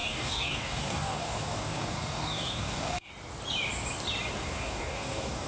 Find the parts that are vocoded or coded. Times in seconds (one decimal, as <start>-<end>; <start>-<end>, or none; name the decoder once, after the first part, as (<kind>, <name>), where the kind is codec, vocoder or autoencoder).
0.0-3.1 (codec, DAC); 4.4-5.5